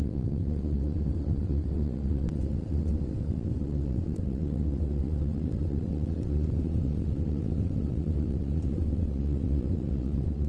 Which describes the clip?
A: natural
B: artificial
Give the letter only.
B